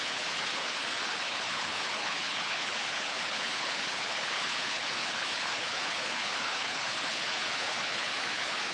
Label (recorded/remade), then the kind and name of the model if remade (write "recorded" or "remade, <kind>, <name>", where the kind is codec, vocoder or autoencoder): remade, codec, HILCodec